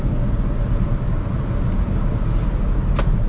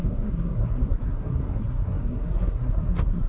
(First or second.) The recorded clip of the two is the first